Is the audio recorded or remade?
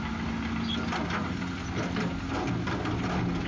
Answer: recorded